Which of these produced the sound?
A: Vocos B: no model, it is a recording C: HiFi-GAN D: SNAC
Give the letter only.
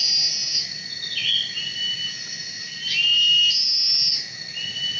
B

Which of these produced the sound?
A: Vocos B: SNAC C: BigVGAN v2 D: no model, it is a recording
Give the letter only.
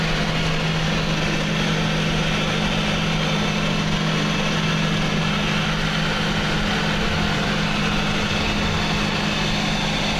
D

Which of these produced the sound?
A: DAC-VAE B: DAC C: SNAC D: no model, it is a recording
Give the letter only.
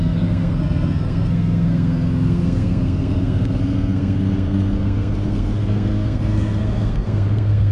C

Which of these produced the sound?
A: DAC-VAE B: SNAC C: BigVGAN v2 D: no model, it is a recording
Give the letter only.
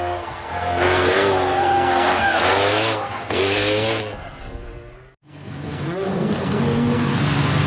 B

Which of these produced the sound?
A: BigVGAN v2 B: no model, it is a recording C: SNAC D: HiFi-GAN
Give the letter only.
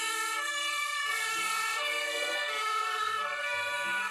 C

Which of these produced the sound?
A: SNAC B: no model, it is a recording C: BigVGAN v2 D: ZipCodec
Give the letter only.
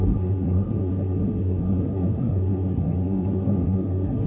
A